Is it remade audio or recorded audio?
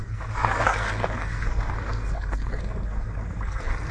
remade